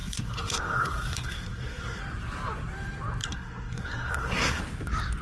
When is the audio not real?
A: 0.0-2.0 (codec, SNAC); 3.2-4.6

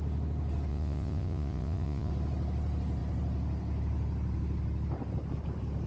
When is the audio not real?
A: 0.7-2.1 (vocoder, Vocos)

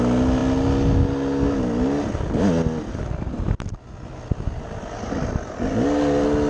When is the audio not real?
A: none

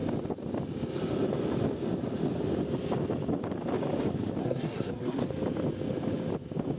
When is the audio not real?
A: 4.4-5.2 (codec, SNAC)